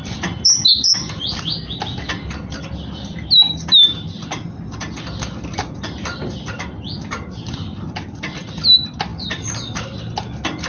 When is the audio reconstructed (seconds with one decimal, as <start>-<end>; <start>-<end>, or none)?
none